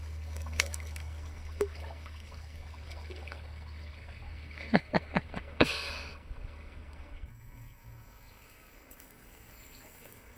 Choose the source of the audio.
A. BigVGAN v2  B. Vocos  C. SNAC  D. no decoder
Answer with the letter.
C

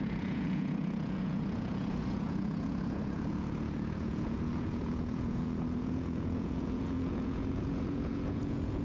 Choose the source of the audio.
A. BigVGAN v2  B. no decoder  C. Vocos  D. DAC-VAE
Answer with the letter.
C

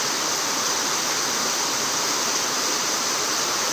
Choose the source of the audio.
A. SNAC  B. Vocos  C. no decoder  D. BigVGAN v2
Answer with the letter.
D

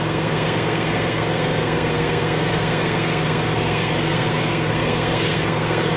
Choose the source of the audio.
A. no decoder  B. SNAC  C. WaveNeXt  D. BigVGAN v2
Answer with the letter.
B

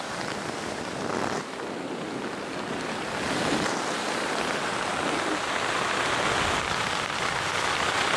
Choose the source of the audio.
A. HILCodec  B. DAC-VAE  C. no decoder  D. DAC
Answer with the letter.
C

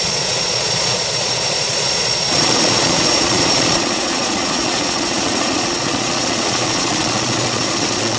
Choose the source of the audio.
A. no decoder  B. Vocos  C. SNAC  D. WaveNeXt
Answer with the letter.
B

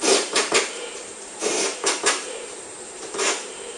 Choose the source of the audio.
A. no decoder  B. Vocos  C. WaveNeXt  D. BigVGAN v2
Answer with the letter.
D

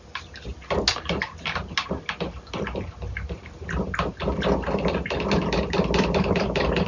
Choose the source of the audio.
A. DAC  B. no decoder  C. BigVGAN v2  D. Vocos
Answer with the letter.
B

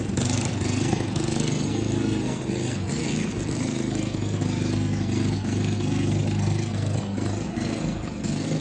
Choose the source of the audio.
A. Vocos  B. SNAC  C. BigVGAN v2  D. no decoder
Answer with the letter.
B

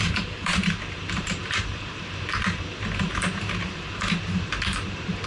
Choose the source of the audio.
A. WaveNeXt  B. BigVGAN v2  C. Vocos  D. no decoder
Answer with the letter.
B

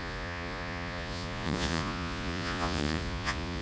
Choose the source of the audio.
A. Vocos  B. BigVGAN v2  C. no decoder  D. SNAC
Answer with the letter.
A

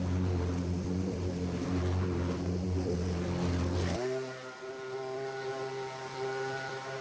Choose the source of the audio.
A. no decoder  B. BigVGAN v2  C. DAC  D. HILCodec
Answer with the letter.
A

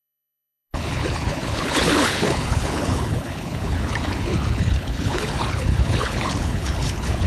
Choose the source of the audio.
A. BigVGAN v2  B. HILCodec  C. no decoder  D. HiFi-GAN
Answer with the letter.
B